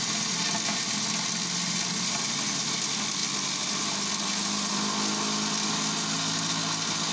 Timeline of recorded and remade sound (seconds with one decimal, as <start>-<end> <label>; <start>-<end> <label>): 0.0-7.1 recorded